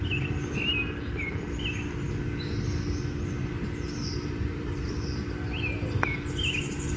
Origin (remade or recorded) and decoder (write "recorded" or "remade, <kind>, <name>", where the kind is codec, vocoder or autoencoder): recorded